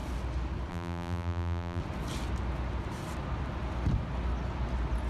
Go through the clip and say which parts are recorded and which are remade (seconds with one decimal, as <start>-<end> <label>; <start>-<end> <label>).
0.0-0.7 recorded; 0.7-1.8 remade; 1.8-5.1 recorded